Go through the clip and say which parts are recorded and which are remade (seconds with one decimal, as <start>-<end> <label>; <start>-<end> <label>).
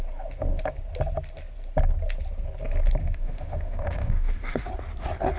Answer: 0.0-3.0 recorded; 3.0-4.7 remade; 4.7-5.4 recorded